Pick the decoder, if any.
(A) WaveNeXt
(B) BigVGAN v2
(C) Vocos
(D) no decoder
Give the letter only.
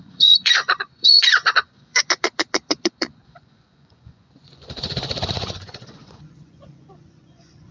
C